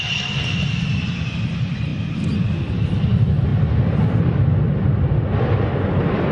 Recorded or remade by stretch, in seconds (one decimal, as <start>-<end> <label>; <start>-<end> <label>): 0.0-1.9 remade; 1.9-2.7 recorded; 2.7-3.5 remade; 3.5-6.3 recorded